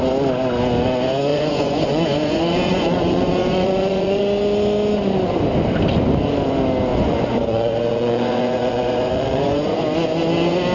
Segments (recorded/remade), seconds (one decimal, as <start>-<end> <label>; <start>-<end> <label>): 0.0-1.3 recorded; 1.3-4.2 remade; 4.2-6.9 recorded; 6.9-9.8 remade; 9.8-10.7 recorded